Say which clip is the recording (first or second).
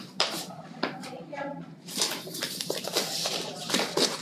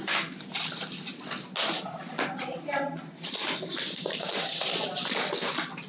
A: second